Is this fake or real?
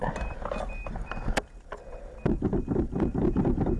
real